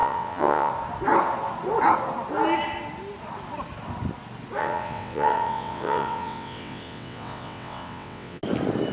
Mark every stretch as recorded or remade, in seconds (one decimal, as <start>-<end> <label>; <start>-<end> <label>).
0.0-0.7 remade; 0.7-4.6 recorded; 4.6-8.4 remade; 8.4-8.9 recorded